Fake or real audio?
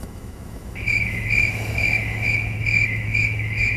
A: fake